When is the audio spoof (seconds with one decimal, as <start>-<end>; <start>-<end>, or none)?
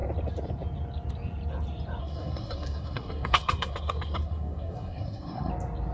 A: 2.0-5.5